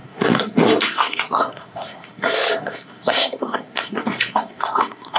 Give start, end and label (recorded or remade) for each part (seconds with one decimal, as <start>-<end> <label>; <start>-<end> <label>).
0.0-5.2 remade